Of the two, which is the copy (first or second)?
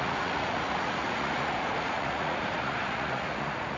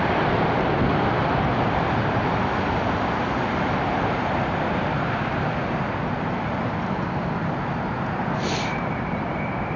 first